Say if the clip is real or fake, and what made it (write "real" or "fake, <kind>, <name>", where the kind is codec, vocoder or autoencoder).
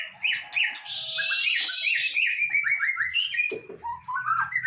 real